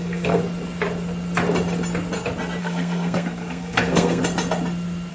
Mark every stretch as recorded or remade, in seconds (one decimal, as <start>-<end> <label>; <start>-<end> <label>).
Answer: 0.0-0.4 remade; 0.4-2.6 recorded; 2.6-4.2 remade; 4.2-5.1 recorded